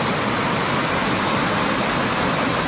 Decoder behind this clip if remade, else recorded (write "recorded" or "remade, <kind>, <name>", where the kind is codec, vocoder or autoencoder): recorded